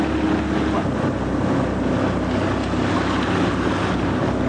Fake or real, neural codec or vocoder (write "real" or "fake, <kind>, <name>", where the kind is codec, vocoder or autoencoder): real